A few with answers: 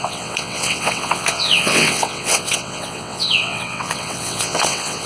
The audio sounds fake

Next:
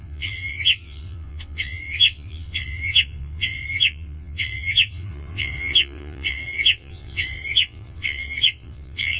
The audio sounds fake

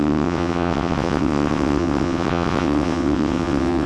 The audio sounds fake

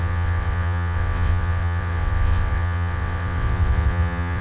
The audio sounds fake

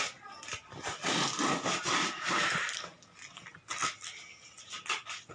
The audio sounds real